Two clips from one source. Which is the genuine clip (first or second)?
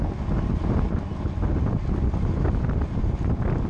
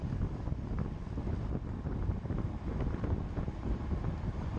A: first